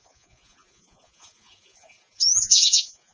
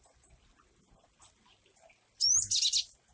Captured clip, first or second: second